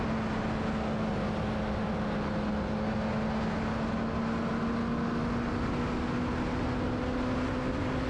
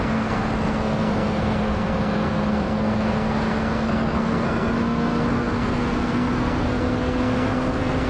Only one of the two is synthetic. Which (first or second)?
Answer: second